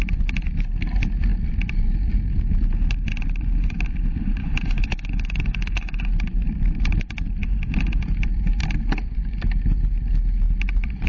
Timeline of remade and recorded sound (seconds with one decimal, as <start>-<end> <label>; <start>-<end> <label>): 0.0-4.4 recorded; 4.4-6.0 remade; 6.0-11.1 recorded